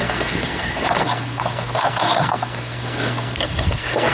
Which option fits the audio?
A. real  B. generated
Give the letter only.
B